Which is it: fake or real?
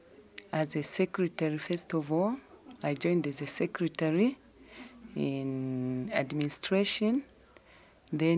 real